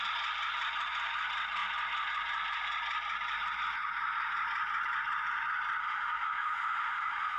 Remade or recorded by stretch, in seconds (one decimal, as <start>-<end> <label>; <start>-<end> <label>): 0.0-5.8 recorded; 5.8-7.4 remade